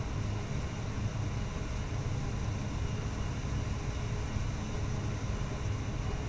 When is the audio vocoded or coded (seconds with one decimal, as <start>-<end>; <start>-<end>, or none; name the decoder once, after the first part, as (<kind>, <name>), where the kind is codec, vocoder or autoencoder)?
none